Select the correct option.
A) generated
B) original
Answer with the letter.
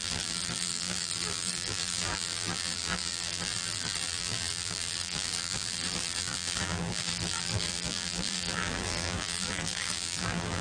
A